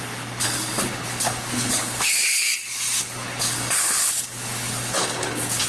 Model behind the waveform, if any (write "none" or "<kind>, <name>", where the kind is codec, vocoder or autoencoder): codec, HILCodec